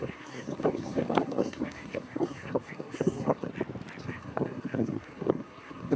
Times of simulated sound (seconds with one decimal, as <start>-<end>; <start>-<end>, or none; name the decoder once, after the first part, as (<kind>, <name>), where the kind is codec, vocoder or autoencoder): 0.0-3.5 (codec, SNAC); 4.0-6.0